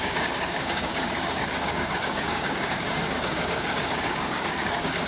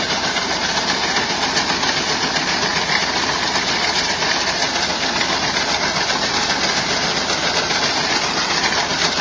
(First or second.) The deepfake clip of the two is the first